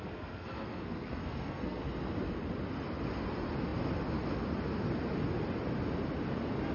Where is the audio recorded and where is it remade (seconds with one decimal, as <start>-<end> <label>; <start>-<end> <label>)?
0.0-1.8 remade; 1.8-6.7 recorded

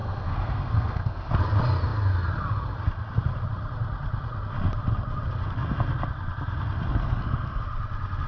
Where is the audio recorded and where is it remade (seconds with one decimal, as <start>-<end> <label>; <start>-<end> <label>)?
0.0-1.3 remade; 1.3-7.0 recorded; 7.0-7.6 remade; 7.6-8.3 recorded

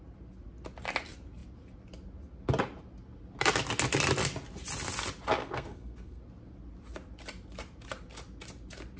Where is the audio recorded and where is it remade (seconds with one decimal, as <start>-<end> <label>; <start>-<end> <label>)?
0.0-5.4 recorded; 5.4-6.2 remade; 6.2-9.0 recorded

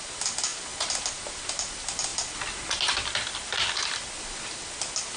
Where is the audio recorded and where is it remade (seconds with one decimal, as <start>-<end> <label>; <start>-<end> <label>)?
0.0-5.2 recorded

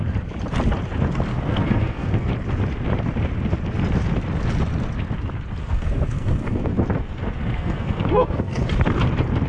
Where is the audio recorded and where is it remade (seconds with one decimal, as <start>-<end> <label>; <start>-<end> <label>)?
0.0-1.3 recorded; 1.3-2.3 remade; 2.3-5.6 recorded; 5.6-8.7 remade; 8.7-9.5 recorded

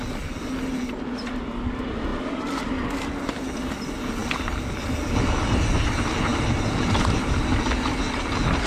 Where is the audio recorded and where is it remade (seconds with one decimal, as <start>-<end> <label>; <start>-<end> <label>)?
0.0-8.7 recorded

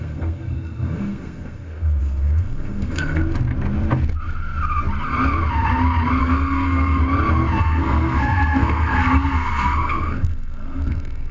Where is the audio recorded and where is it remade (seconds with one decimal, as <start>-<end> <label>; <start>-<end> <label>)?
0.0-3.2 remade; 3.2-6.2 recorded; 6.2-7.0 remade; 7.0-7.6 recorded; 7.6-11.3 remade